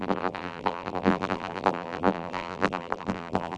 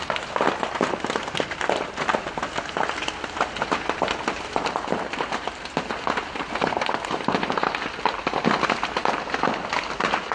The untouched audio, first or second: second